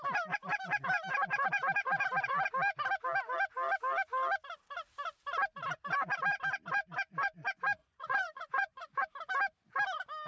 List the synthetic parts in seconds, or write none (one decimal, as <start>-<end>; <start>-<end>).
7.8-9.0